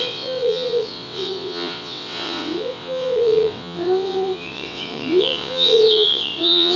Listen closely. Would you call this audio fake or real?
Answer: fake